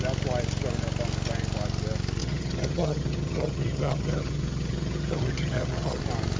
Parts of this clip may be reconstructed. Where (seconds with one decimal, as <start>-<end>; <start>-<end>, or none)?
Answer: 2.2-6.0